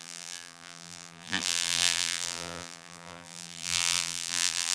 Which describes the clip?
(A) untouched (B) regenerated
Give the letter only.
B